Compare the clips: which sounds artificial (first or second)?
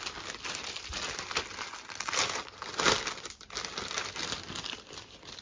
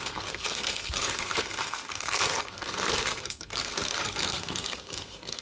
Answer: second